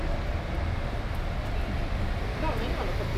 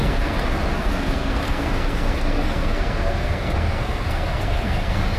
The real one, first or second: first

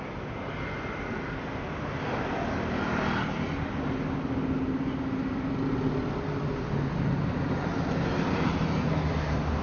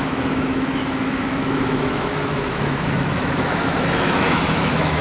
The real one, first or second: first